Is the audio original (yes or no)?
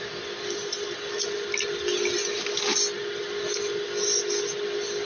yes